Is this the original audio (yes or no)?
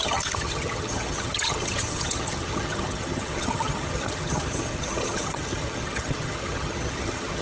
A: no